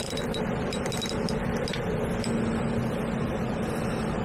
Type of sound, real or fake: real